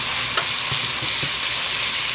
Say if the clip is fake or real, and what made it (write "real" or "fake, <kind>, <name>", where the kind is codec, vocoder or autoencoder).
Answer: real